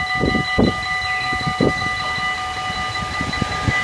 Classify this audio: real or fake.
real